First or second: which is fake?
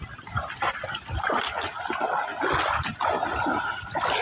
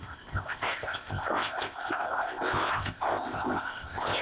second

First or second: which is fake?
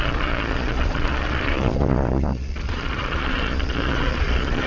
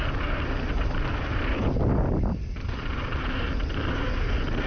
first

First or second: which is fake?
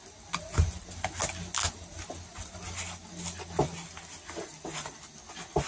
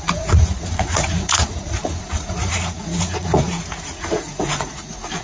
second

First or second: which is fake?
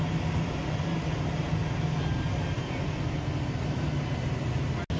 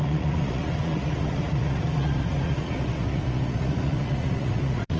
second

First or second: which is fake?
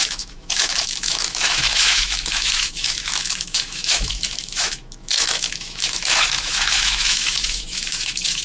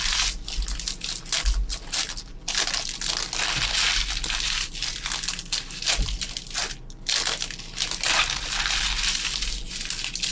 first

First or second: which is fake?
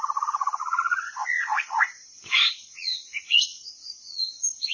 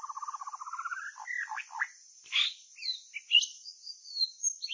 first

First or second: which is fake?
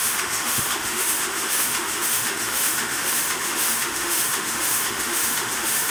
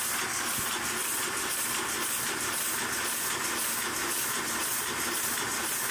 first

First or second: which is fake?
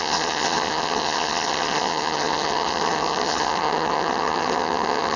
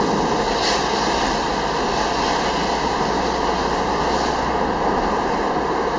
first